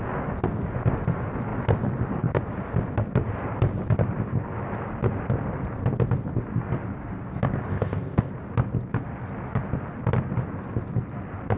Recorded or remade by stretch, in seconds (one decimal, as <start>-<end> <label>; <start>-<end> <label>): 0.0-7.7 recorded; 7.7-8.3 remade; 8.3-11.6 recorded